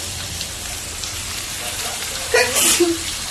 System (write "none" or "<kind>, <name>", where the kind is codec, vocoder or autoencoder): none